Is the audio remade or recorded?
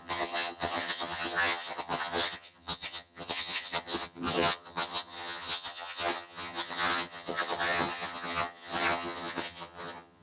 remade